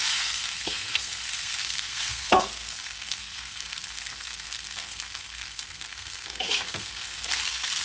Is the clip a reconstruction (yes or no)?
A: yes